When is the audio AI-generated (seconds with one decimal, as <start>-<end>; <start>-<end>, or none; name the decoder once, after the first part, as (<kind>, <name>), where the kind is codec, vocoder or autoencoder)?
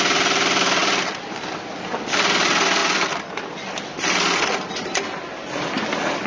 none